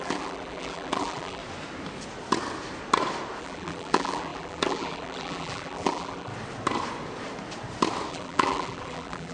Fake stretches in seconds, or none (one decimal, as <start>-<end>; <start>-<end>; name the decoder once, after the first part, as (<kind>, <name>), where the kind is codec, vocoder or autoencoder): 0.0-1.4 (vocoder, BigVGAN v2); 3.4-6.3; 8.1-9.3